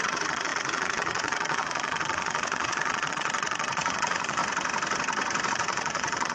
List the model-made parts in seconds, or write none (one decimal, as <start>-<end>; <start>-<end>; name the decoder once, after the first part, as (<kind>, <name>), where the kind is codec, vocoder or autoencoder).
0.0-4.4 (vocoder, Vocos); 5.5-6.3